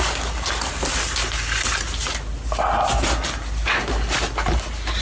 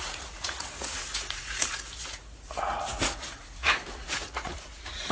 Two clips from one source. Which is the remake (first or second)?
second